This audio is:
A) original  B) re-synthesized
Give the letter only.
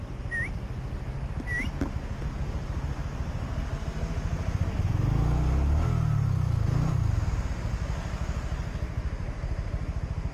A